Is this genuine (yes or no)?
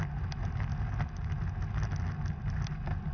yes